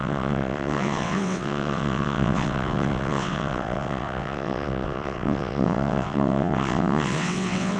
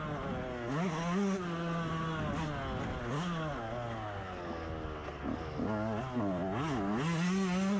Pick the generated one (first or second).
first